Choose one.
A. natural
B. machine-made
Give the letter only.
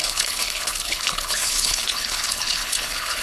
B